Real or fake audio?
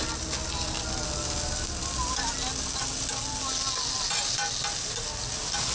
real